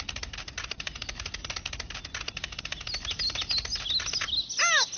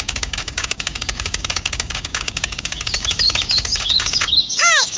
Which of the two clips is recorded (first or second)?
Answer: first